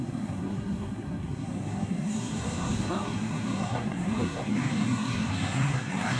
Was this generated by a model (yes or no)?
yes